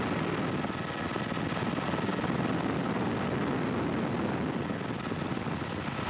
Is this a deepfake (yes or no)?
no